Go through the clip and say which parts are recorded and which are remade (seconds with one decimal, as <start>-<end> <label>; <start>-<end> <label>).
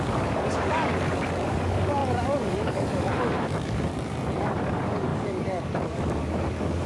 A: 0.0-3.9 remade; 3.9-4.4 recorded; 4.4-6.9 remade